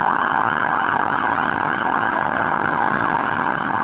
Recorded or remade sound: remade